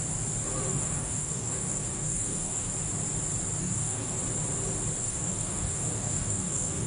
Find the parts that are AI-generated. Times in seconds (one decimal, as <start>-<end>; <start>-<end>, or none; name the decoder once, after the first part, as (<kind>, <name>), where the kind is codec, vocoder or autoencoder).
0.7-2.7 (codec, DAC); 3.6-4.2; 5.0-6.9